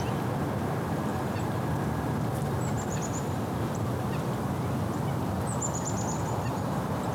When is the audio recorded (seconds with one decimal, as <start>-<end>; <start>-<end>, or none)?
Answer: 0.0-7.1